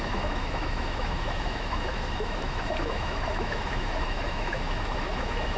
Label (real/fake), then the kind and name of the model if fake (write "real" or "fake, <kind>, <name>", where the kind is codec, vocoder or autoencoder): fake, autoencoder, DAC-VAE